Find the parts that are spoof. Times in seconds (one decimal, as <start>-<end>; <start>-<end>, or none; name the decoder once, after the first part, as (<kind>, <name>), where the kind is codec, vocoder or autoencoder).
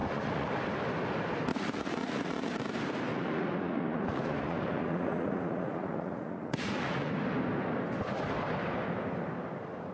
0.0-0.5 (vocoder, Vocos); 1.5-2.5; 3.1-7.1